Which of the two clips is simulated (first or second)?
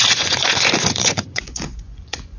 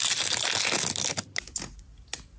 first